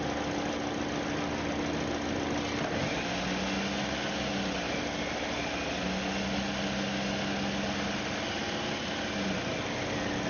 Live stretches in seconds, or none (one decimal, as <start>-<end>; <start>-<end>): 0.0-10.3

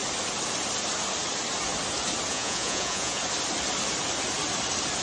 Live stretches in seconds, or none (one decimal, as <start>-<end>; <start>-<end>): 0.0-2.3; 3.2-5.0